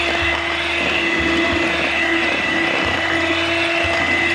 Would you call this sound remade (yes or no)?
no